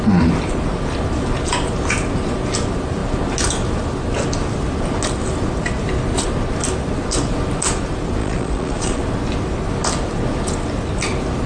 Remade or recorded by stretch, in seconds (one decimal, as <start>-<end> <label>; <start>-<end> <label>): 0.0-8.2 recorded; 8.2-9.0 remade; 9.0-11.5 recorded